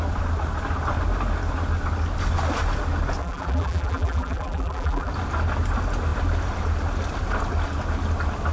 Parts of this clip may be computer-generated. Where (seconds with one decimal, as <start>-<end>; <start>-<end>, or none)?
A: 3.2-5.1